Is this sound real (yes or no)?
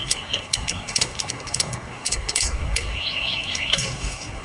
no